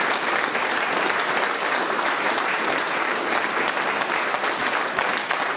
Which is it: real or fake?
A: fake